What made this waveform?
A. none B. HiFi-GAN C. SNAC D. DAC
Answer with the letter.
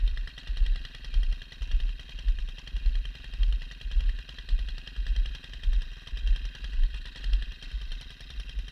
A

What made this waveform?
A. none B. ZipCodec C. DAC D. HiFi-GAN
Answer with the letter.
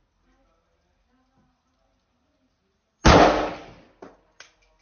A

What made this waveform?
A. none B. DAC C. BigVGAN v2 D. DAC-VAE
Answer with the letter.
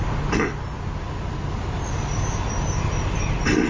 A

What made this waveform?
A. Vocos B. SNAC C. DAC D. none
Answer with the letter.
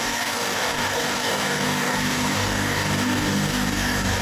C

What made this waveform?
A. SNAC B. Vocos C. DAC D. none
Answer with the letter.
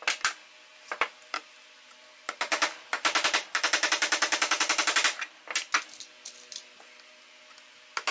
D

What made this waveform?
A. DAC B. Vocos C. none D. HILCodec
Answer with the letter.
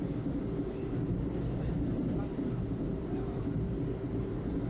C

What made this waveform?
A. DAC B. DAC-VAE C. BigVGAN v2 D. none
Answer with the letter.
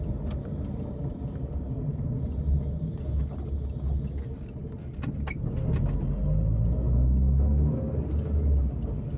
D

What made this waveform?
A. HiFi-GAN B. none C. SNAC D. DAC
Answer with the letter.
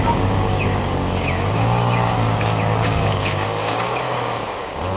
D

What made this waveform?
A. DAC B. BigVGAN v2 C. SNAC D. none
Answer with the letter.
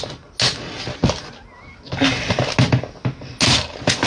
D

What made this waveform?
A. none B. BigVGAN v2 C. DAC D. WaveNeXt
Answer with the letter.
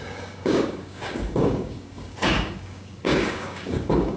C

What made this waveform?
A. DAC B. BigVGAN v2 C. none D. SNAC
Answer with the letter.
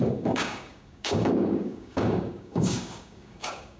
A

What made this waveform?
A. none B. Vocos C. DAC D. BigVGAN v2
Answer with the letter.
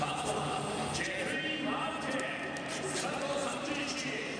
A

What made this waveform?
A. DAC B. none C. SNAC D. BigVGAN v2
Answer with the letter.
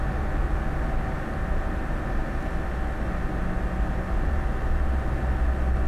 B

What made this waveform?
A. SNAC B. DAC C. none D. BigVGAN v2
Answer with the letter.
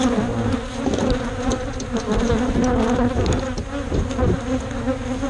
C